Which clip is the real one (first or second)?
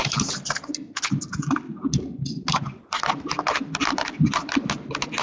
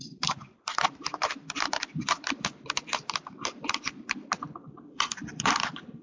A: first